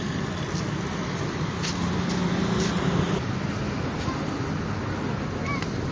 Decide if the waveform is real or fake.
real